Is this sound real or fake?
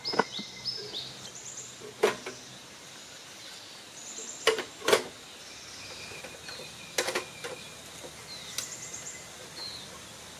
real